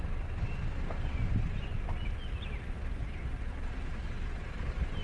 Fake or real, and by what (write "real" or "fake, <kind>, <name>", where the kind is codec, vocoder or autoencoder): real